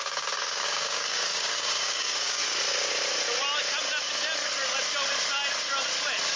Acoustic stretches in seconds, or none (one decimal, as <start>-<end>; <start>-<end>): 2.4-6.4